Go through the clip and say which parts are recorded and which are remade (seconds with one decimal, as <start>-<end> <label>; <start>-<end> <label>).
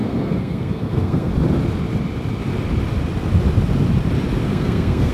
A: 0.0-1.3 remade; 1.3-4.4 recorded; 4.4-5.1 remade